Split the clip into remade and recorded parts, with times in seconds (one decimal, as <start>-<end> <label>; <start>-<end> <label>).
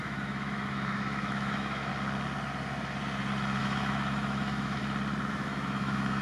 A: 0.0-1.9 remade; 1.9-3.6 recorded; 3.6-4.8 remade; 4.8-5.3 recorded; 5.3-6.2 remade